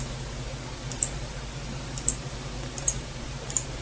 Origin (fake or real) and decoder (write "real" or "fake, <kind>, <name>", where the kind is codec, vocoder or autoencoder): real